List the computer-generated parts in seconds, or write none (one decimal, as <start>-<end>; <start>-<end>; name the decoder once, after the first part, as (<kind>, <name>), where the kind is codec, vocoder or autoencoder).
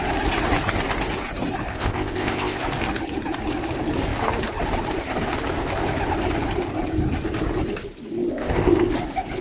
1.7-2.6 (codec, ZipCodec); 8.3-8.9